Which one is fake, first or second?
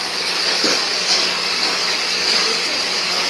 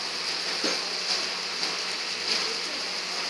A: first